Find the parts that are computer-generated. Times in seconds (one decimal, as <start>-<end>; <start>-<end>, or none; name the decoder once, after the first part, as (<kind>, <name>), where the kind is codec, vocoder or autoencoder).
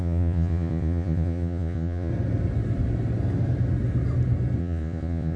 0.0-2.1 (vocoder, Vocos); 4.6-5.4